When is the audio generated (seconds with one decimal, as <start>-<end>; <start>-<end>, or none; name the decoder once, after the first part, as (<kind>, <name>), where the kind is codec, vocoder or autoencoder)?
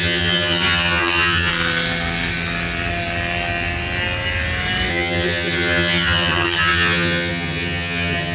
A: 0.0-1.5 (vocoder, HiFi-GAN); 4.9-8.3